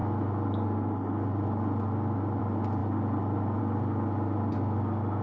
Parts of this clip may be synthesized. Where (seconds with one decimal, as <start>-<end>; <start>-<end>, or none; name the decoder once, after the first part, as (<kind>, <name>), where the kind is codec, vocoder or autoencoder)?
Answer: none